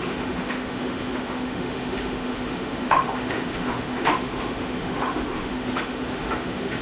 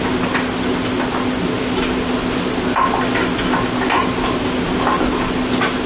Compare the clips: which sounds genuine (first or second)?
second